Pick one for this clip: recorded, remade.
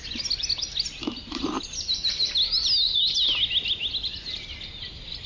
recorded